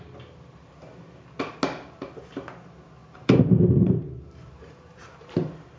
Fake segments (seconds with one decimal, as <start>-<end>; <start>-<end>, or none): 3.0-5.8